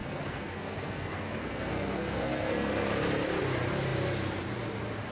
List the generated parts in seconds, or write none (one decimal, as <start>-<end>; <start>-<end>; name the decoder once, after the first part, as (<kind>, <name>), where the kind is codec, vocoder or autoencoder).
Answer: 0.0-2.7 (codec, SNAC)